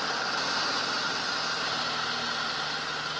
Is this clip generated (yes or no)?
no